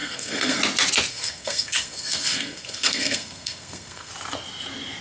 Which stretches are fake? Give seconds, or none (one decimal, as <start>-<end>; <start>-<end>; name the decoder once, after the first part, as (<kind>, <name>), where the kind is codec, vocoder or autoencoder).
0.0-0.6 (codec, SNAC); 1.1-4.1